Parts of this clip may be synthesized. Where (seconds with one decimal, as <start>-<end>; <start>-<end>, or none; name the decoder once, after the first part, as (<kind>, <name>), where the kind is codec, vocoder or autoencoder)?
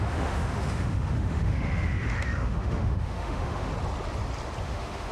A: 0.0-3.7 (autoencoder, DAC-VAE); 4.6-5.1